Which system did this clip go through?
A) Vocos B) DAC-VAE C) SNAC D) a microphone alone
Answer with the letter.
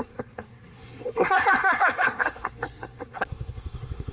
C